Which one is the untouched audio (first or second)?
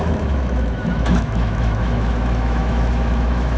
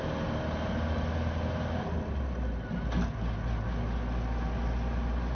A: second